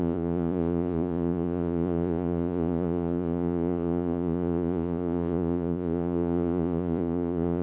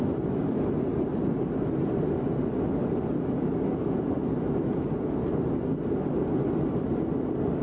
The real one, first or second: second